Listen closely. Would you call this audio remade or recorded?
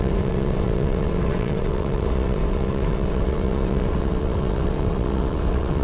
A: remade